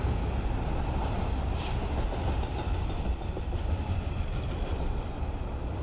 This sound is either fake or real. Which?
real